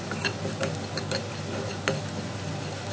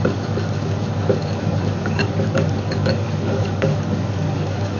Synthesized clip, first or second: second